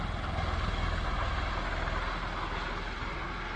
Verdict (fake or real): real